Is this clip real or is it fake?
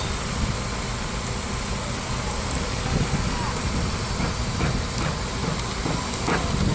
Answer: real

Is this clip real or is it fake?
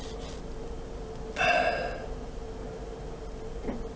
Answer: real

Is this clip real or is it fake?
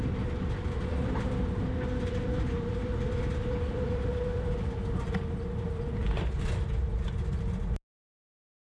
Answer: real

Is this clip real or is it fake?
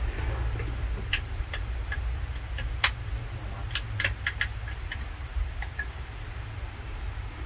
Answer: real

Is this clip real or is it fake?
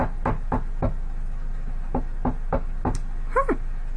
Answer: real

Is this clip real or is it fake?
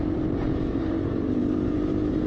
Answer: fake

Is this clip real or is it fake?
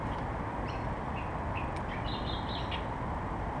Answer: real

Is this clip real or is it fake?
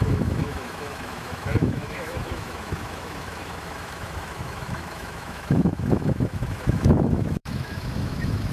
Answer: fake